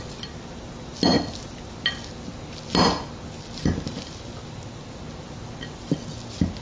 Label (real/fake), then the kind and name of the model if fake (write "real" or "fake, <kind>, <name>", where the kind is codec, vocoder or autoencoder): real